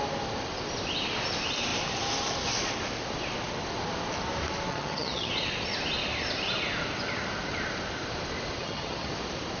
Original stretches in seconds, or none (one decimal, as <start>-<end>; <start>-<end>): 0.0-4.7; 5.3-8.6; 9.1-9.6